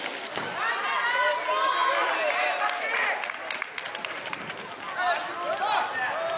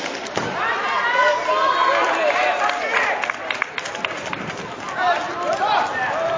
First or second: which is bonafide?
first